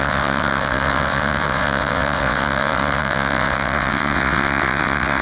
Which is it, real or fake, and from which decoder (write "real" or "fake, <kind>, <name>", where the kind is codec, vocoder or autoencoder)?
fake, vocoder, WaveNeXt